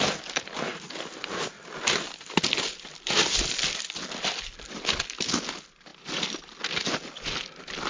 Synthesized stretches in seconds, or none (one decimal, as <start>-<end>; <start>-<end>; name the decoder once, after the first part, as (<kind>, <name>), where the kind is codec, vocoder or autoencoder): none